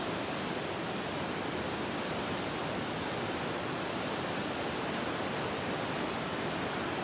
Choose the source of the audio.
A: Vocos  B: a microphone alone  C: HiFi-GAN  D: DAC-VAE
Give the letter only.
B